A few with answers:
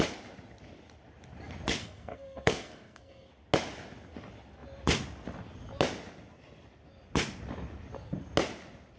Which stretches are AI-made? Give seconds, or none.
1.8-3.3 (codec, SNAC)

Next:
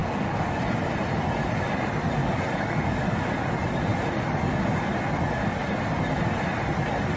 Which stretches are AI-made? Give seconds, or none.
0.0-0.6 (codec, DAC); 2.2-3.3